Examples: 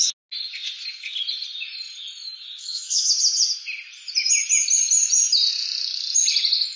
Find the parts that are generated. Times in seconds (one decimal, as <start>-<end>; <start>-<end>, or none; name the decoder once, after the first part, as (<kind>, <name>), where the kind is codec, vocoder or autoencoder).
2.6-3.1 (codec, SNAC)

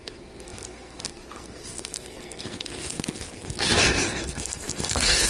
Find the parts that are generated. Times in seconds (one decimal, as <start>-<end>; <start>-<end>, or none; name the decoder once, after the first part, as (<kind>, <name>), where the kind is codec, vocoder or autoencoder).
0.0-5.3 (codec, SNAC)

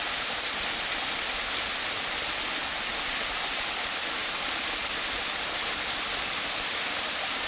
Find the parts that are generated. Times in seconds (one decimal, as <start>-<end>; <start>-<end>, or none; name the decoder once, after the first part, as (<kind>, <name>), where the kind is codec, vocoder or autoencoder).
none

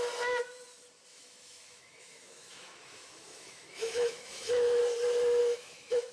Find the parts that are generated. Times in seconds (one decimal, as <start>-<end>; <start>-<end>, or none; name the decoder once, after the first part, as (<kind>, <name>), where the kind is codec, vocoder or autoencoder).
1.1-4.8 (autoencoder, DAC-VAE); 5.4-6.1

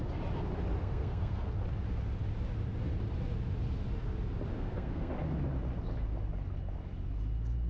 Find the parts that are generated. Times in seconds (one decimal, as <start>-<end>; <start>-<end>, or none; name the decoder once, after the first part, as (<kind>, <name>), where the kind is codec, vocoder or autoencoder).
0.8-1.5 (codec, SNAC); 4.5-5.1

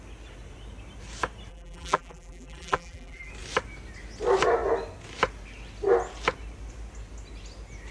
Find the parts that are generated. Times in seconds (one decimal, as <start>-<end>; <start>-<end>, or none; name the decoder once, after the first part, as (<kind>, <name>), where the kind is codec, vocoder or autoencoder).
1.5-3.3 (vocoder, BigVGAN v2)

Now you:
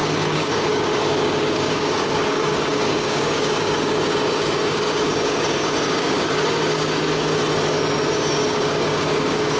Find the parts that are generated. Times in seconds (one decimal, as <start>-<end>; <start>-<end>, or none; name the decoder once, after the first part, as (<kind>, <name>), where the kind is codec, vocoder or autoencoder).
0.0-7.4 (codec, DAC); 8.1-9.6

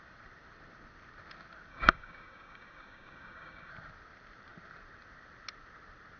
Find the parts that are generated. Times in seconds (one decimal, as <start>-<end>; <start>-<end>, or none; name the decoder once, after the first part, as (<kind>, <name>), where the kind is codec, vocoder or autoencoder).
1.7-3.7 (codec, DAC)